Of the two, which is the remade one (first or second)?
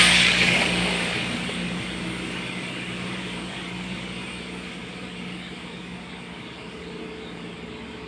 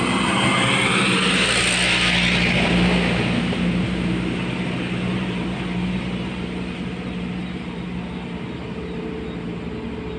first